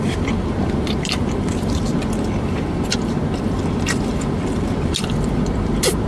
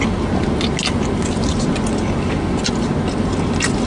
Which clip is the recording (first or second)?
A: second